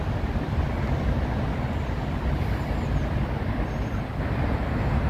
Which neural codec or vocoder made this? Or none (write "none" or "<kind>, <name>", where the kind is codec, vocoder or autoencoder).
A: none